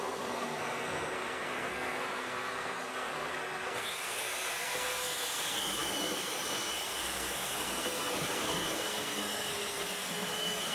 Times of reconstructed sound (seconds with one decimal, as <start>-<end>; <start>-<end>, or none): 0.0-10.7

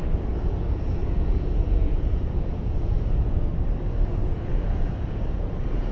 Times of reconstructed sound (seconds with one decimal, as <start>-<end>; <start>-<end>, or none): 0.0-3.5; 4.1-5.9

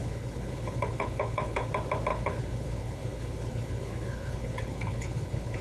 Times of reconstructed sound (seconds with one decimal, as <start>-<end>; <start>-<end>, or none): 0.0-1.7; 2.1-5.6

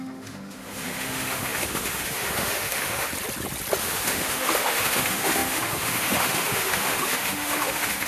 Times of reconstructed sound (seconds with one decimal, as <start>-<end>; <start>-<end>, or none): 0.0-3.1; 3.8-8.1

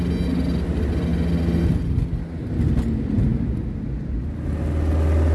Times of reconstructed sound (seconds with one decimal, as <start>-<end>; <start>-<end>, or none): none